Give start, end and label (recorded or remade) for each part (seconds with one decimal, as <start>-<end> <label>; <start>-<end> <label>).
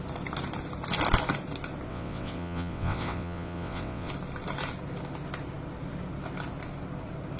0.0-1.9 recorded; 1.9-4.1 remade; 4.1-7.4 recorded